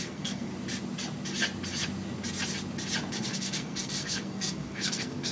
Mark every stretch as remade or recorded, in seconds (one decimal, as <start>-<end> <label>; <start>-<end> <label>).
0.0-0.5 remade; 0.5-3.1 recorded; 3.1-5.3 remade